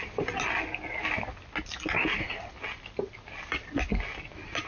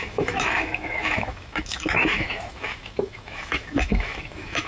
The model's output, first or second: second